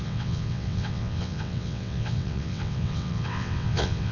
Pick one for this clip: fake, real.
fake